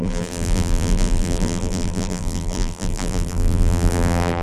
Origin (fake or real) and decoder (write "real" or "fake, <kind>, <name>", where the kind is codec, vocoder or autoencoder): fake, vocoder, BigVGAN v2